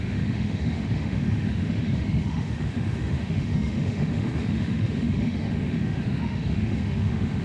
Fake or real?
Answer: fake